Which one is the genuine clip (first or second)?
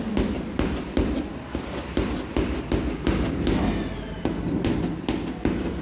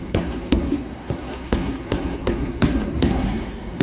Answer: first